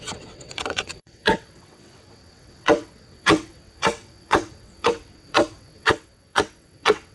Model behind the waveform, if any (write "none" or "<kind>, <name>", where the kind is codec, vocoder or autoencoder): vocoder, WaveNeXt